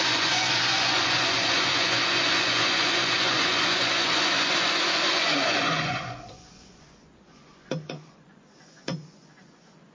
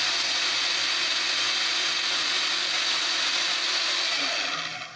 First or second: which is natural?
second